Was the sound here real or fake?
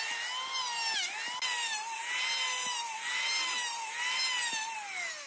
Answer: real